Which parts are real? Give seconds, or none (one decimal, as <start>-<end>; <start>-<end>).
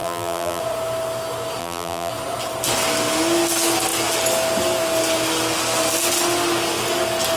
0.6-1.6; 2.1-7.4